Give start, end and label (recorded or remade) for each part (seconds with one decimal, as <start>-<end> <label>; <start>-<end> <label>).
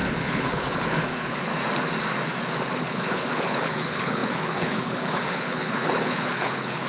0.0-1.5 remade; 1.5-2.8 recorded; 2.8-6.9 remade